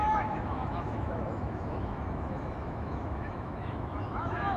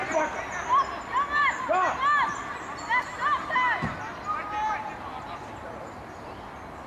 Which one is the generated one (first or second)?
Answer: first